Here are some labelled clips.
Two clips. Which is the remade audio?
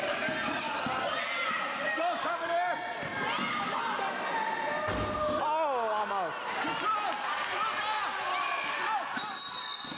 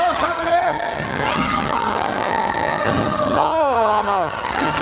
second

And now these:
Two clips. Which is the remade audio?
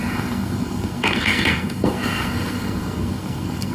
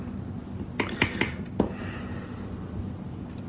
first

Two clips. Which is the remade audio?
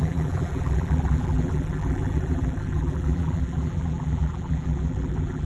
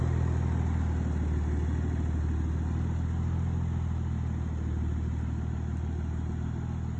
first